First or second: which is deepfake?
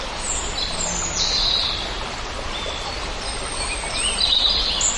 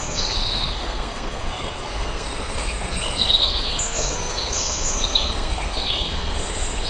second